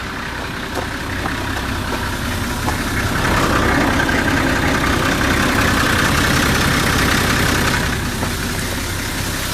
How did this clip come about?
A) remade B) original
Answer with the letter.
B